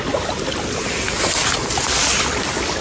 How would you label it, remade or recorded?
recorded